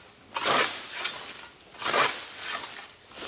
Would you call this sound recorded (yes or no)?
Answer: yes